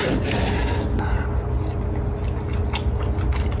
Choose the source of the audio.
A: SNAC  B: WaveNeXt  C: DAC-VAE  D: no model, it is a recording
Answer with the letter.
D